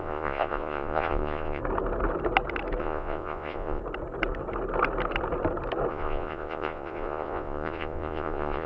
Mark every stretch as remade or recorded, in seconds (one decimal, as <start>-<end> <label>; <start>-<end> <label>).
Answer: 0.0-1.6 remade; 1.6-2.8 recorded; 2.8-3.8 remade; 3.8-5.9 recorded; 5.9-8.7 remade